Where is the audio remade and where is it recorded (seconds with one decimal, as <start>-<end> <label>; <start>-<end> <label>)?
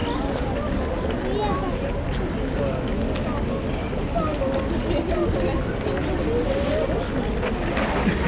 0.0-8.3 recorded